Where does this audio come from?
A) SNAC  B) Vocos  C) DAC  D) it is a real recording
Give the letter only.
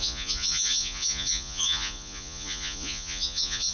B